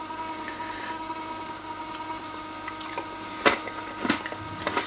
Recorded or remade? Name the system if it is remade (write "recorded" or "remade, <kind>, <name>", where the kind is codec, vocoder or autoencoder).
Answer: recorded